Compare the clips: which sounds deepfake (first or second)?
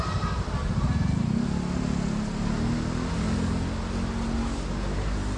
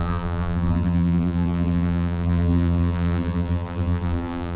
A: second